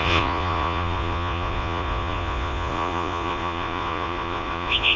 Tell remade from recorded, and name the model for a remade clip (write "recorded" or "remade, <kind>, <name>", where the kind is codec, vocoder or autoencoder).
remade, vocoder, Vocos